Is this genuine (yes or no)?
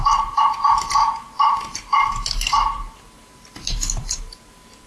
no